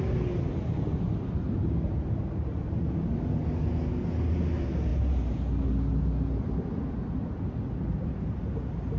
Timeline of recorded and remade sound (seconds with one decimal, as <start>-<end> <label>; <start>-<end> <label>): 0.0-9.0 recorded